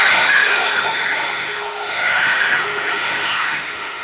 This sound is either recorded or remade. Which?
remade